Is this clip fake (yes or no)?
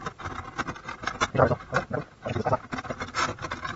no